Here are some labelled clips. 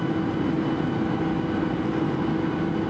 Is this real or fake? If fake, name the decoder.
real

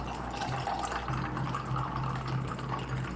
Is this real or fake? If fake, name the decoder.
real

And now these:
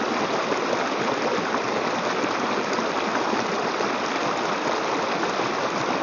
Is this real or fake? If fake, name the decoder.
real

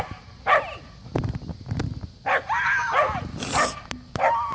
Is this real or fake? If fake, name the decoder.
real